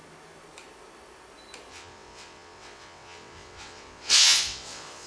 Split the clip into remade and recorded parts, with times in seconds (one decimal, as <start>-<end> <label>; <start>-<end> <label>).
0.0-1.7 recorded; 1.7-5.1 remade